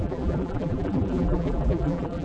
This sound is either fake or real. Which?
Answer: fake